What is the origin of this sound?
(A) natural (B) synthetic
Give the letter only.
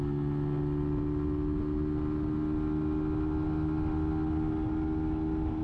A